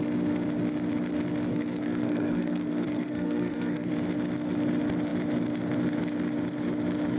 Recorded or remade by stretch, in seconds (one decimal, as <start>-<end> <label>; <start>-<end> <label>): 0.0-1.5 recorded; 1.5-3.9 remade; 3.9-7.2 recorded

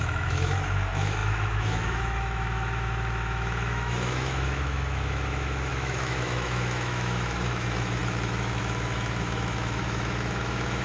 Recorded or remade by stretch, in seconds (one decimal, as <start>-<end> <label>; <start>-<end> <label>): 0.0-10.8 remade

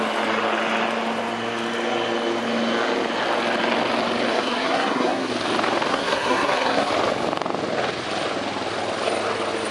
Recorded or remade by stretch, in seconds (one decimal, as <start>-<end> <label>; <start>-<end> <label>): 0.0-4.3 recorded; 4.3-5.3 remade; 5.3-5.9 recorded; 5.9-6.9 remade; 6.9-9.7 recorded

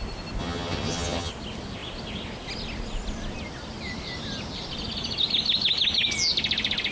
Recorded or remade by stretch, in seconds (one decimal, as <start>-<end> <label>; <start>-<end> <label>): 0.0-0.4 recorded; 0.4-1.3 remade; 1.3-6.9 recorded

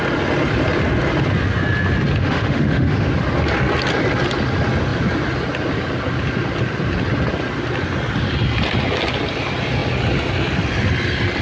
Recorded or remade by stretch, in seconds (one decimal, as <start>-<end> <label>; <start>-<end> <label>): 0.0-2.2 recorded; 2.2-3.1 remade; 3.1-11.4 recorded